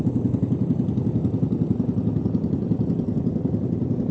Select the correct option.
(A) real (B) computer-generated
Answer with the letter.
A